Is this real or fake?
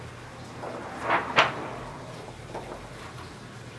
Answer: real